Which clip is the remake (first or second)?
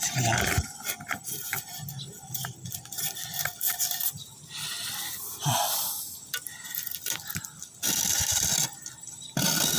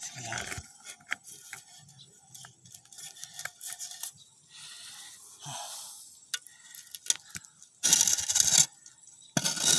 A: first